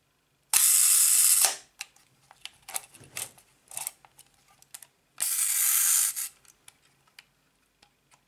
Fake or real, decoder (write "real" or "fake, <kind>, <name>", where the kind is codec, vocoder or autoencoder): real